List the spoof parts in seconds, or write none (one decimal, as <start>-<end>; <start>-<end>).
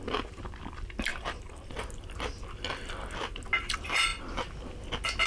1.1-1.7